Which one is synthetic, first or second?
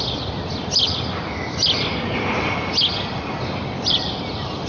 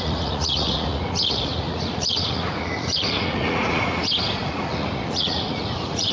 second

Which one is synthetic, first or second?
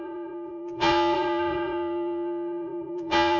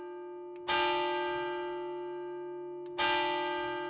first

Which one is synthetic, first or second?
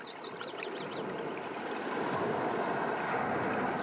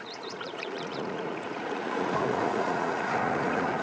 second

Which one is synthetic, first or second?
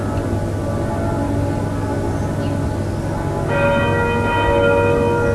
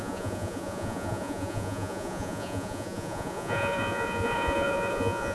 second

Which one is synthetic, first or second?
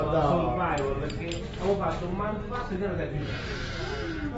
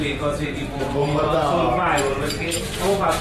second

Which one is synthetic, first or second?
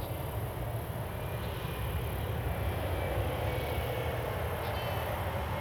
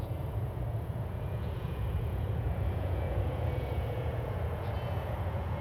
second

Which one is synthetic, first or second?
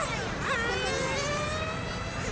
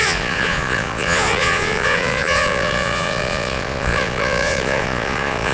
second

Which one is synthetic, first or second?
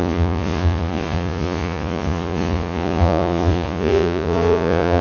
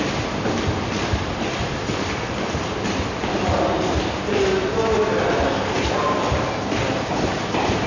first